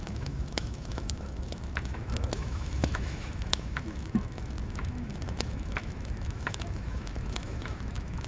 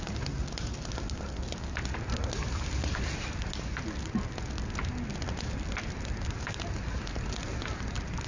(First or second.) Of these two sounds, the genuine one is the second